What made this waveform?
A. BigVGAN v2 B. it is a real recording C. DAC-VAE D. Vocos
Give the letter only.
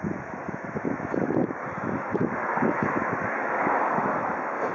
C